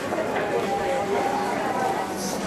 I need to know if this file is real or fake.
real